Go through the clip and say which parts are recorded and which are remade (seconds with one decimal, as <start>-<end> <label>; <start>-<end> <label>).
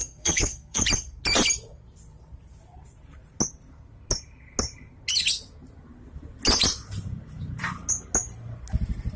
0.0-0.8 remade; 0.8-9.2 recorded